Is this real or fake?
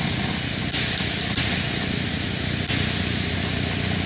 real